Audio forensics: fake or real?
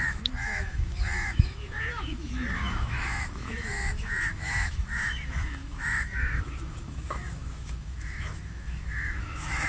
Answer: fake